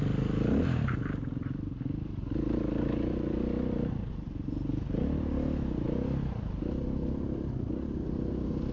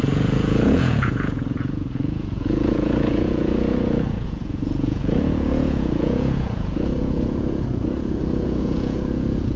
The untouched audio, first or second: first